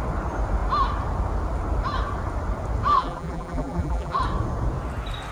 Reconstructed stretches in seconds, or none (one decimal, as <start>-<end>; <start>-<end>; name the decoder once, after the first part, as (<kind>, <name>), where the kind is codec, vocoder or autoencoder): 2.9-4.2 (vocoder, BigVGAN v2)